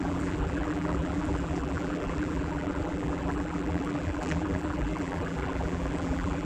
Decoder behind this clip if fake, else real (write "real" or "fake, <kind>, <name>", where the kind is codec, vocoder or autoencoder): fake, vocoder, BigVGAN v2